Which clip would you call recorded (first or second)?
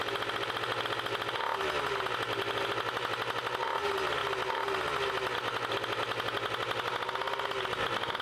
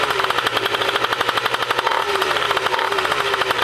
first